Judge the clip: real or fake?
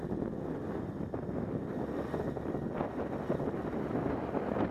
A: real